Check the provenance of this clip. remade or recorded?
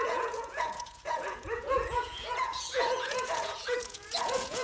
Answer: remade